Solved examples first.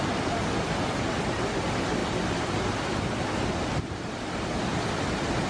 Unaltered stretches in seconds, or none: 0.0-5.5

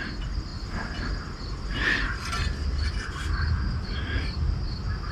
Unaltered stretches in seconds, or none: 0.0-5.1

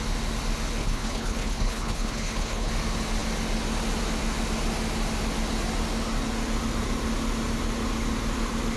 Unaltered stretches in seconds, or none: 0.0-0.8; 2.7-8.8